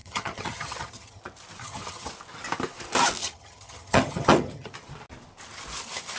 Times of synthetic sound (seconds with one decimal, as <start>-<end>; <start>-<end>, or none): 0.0-1.2; 1.6-2.1; 3.2-4.7